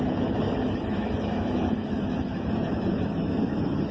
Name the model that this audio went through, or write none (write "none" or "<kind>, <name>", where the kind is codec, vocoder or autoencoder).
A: autoencoder, DAC-VAE